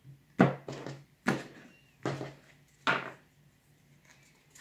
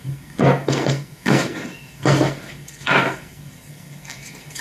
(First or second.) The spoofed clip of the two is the second